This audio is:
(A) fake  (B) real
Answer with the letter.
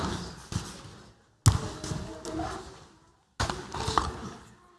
B